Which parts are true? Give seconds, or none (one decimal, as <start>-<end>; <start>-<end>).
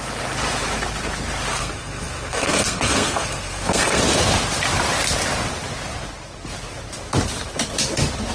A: 0.0-1.5; 4.0-8.3